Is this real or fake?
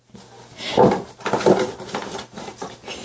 real